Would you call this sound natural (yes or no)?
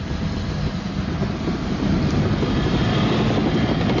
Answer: yes